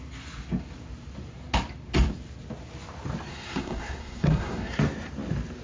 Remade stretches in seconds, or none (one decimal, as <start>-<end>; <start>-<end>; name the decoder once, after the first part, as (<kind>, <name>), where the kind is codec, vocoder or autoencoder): 3.3-4.8 (codec, SNAC)